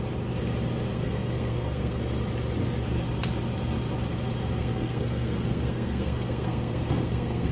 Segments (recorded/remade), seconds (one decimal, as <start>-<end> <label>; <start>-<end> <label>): 0.0-0.9 recorded; 0.9-2.0 remade; 2.0-4.6 recorded; 4.6-7.5 remade